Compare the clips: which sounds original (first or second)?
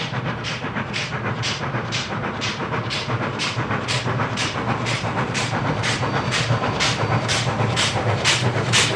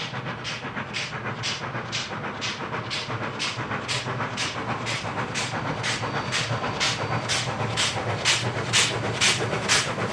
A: second